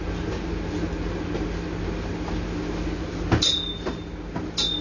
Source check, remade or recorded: recorded